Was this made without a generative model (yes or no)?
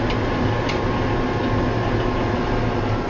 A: yes